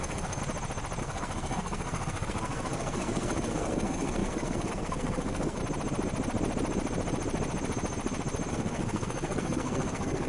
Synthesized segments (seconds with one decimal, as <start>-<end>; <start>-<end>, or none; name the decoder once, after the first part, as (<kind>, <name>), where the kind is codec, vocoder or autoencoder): 0.0-0.4 (codec, SNAC); 1.0-5.6; 8.5-10.3